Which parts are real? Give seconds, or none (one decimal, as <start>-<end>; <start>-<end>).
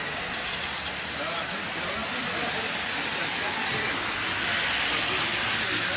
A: 0.0-6.0